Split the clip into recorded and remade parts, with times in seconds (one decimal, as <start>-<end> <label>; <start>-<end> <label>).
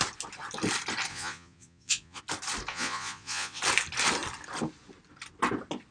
0.0-1.1 recorded; 1.1-2.2 remade; 2.2-2.7 recorded; 2.7-3.6 remade; 3.6-5.9 recorded